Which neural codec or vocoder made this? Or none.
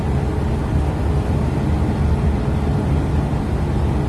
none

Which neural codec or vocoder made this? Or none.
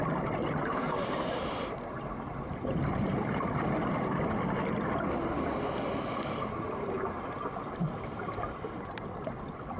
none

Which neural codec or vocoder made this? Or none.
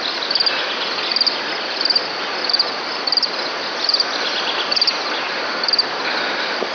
vocoder, BigVGAN v2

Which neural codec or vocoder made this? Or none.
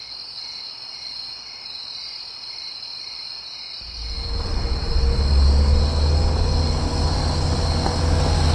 none